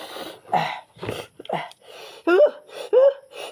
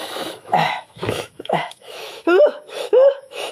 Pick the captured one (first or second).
first